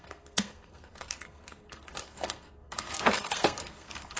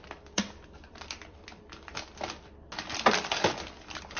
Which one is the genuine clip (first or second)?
second